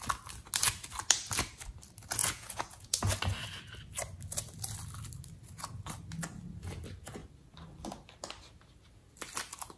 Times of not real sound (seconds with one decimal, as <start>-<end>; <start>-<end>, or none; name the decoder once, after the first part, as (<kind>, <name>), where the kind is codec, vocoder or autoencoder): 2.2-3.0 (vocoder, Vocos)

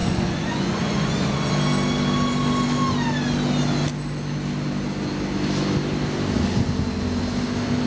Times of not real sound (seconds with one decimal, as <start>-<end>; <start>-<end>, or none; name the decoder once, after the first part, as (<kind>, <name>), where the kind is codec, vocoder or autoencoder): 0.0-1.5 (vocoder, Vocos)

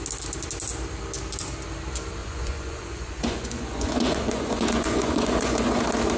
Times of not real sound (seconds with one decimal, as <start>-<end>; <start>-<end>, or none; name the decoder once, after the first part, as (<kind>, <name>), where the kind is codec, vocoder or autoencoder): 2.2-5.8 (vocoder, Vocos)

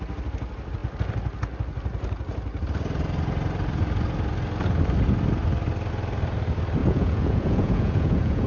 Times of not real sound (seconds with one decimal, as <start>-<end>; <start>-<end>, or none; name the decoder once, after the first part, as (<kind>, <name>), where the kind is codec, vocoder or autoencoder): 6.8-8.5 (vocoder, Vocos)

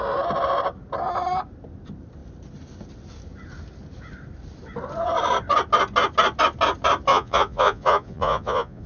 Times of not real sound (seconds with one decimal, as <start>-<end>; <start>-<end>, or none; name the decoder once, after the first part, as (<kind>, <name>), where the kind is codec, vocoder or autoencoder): 7.1-8.9 (vocoder, Vocos)